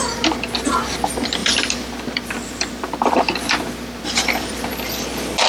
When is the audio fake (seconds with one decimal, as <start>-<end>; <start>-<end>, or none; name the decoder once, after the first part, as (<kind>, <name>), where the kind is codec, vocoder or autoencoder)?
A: 1.4-4.7 (vocoder, BigVGAN v2)